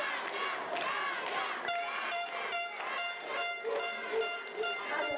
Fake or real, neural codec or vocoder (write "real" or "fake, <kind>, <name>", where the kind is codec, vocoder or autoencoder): real